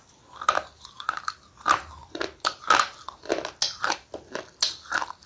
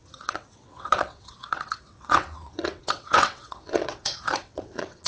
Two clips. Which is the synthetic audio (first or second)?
second